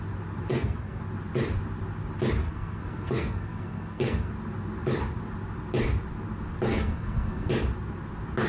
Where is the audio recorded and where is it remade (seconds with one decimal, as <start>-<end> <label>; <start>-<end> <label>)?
0.0-0.5 recorded; 0.5-1.0 remade; 1.0-2.4 recorded; 2.4-4.3 remade; 4.3-6.7 recorded; 6.7-7.5 remade; 7.5-8.5 recorded

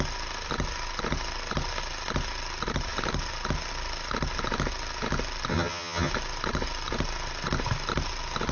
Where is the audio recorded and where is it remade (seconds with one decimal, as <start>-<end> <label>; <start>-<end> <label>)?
0.0-5.5 recorded; 5.5-6.1 remade; 6.1-8.5 recorded